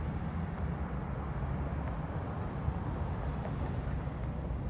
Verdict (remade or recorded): recorded